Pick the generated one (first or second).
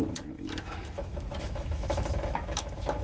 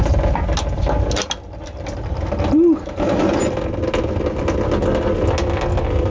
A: first